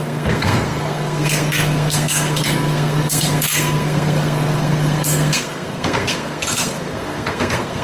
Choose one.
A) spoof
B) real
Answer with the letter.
A